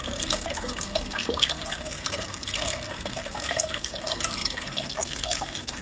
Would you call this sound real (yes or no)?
no